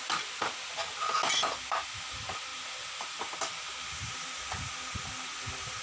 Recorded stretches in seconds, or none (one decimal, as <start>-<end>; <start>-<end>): 0.0-5.8